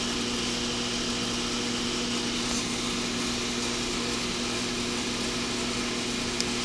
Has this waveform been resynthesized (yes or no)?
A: no